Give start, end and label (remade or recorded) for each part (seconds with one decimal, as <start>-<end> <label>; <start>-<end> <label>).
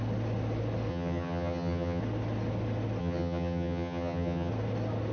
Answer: 0.0-0.9 recorded; 0.9-2.0 remade; 2.0-3.0 recorded; 3.0-4.5 remade; 4.5-5.1 recorded